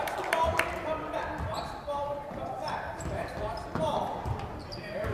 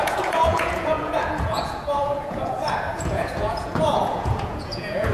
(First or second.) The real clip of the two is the first